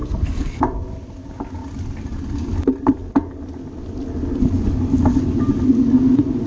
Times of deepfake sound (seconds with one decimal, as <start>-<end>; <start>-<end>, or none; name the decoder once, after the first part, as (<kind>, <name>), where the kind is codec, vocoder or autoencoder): 0.0-0.6 (codec, SNAC)